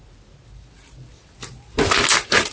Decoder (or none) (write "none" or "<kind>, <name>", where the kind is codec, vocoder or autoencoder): none